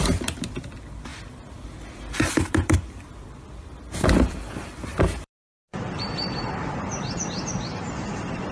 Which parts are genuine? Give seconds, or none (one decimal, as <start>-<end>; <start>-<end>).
1.1-2.3